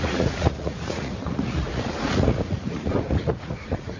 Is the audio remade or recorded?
remade